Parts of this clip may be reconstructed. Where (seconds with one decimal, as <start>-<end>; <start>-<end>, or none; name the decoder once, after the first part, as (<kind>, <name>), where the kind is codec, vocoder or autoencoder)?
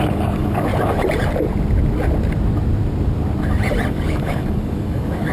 0.0-0.7 (codec, DAC); 3.9-5.3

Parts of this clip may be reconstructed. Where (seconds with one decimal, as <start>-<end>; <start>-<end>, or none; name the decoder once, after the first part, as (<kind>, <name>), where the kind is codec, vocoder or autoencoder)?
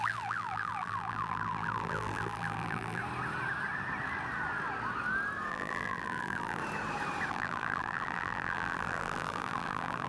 0.0-3.0 (vocoder, BigVGAN v2); 5.5-6.6; 7.3-10.1